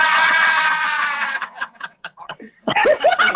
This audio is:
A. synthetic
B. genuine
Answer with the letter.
A